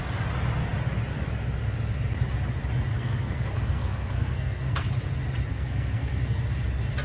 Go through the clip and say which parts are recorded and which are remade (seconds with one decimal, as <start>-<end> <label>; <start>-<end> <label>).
0.0-2.9 recorded; 2.9-4.9 remade; 4.9-5.5 recorded; 5.5-6.4 remade; 6.4-7.0 recorded